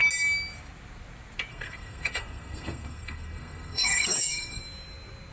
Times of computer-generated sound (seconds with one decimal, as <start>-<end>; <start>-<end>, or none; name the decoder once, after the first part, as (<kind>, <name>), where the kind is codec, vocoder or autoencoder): 1.5-4.6 (codec, SNAC)

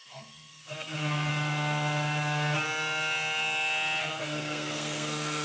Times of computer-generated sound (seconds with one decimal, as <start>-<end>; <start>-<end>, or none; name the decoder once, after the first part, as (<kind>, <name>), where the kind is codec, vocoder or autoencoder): 0.0-1.3 (codec, SNAC); 4.0-5.4

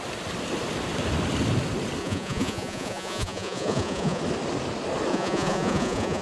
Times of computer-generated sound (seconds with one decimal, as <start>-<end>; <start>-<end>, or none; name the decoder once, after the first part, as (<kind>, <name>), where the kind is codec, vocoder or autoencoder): 2.0-4.2 (vocoder, Vocos); 5.1-6.2